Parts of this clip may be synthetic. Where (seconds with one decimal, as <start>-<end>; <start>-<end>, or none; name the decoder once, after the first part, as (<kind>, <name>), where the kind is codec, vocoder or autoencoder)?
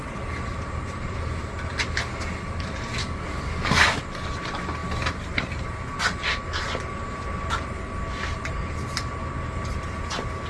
3.0-4.0 (codec, DAC)